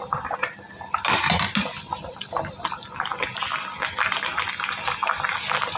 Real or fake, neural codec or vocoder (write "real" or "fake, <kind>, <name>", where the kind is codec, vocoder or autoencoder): real